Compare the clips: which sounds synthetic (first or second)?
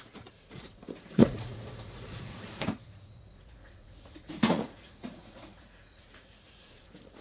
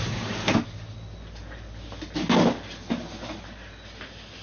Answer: first